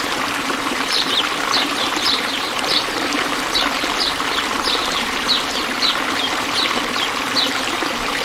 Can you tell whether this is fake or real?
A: fake